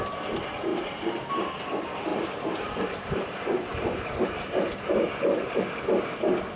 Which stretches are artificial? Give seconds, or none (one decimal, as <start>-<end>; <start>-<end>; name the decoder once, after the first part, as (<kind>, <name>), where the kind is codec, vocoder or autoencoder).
0.7-1.3 (vocoder, BigVGAN v2); 2.1-5.6